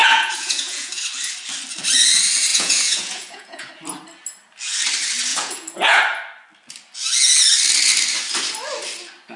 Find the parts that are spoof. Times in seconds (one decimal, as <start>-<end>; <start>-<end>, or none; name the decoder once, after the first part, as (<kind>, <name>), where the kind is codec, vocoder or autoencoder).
0.0-1.0 (vocoder, Vocos); 2.5-3.7; 5.3-6.0